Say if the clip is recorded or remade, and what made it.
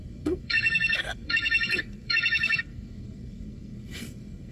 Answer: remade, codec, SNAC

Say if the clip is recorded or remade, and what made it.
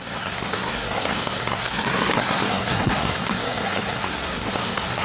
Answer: remade, codec, SNAC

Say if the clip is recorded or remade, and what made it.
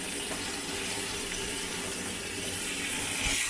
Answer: recorded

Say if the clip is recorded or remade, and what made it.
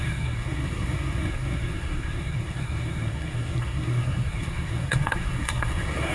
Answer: remade, codec, SNAC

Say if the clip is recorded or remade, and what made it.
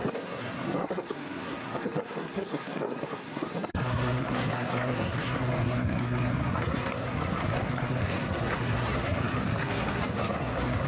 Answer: remade, codec, SNAC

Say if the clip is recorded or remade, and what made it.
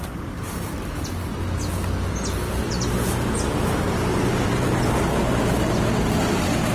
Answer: recorded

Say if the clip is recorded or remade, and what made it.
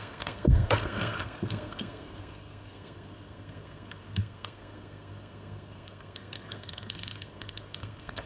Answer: remade, codec, SNAC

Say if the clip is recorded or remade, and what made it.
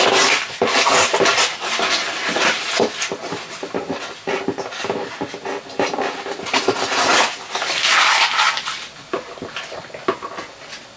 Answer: recorded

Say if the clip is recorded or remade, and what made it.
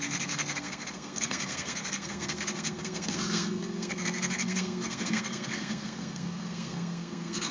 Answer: remade, codec, SNAC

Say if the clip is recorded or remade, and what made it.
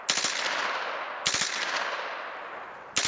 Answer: recorded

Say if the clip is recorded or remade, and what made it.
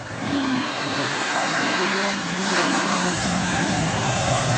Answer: remade, codec, SNAC